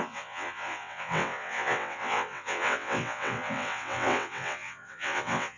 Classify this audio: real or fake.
fake